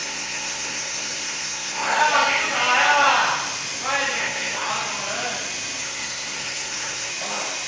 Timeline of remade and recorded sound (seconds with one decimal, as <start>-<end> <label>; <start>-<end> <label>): 0.0-2.0 remade; 2.0-4.2 recorded; 4.2-4.7 remade; 4.7-5.8 recorded; 5.8-7.1 remade; 7.1-7.7 recorded